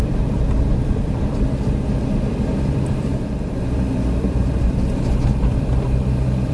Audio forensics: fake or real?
fake